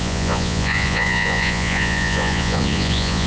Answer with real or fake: fake